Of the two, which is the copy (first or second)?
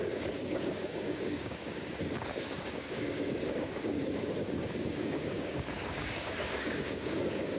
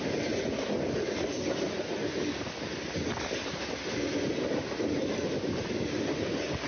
first